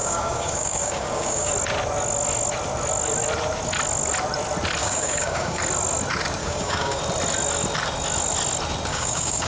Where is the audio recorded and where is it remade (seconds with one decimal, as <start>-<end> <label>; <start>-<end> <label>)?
0.0-1.5 remade; 1.5-4.8 recorded; 4.8-5.6 remade; 5.6-6.4 recorded; 6.4-7.0 remade; 7.0-8.9 recorded; 8.9-9.5 remade